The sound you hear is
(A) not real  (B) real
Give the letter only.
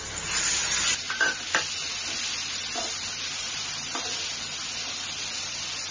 B